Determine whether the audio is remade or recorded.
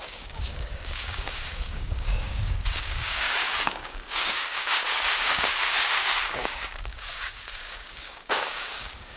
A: remade